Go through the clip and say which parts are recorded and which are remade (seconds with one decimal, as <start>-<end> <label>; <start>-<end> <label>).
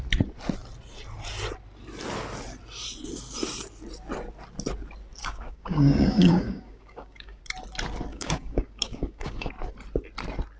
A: 0.0-5.2 recorded; 5.2-7.4 remade; 7.4-8.1 recorded; 8.1-9.5 remade; 9.5-10.6 recorded